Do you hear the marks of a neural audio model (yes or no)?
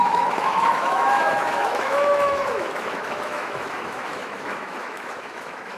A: yes